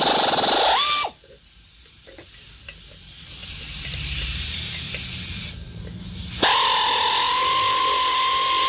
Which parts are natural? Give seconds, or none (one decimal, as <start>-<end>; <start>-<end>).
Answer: 6.2-7.8